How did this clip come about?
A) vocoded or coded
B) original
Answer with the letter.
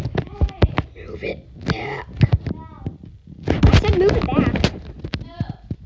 B